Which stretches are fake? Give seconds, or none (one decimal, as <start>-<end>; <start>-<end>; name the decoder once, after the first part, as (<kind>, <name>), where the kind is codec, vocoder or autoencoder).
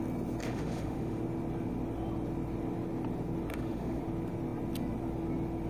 0.4-1.2 (autoencoder, DAC-VAE); 3.5-4.0